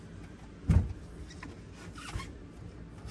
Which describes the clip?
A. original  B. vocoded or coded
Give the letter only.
A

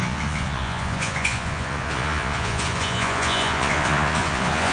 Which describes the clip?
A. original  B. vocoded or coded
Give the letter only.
B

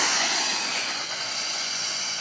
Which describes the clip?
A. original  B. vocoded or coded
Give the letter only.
B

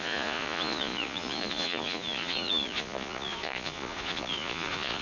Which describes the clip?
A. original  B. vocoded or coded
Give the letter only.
B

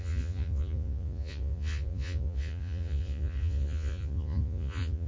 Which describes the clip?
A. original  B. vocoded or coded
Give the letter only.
B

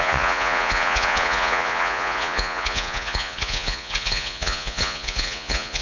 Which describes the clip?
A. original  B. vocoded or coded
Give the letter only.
B